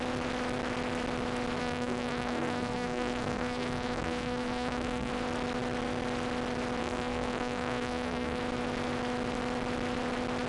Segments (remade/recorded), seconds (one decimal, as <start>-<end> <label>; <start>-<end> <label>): 0.0-1.6 recorded; 1.6-5.1 remade; 5.1-6.8 recorded; 6.8-8.4 remade; 8.4-10.5 recorded